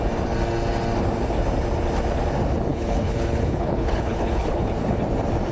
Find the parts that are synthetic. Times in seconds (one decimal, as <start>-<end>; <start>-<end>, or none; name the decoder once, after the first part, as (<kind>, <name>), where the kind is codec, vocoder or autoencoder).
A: 2.7-5.0 (codec, HILCodec)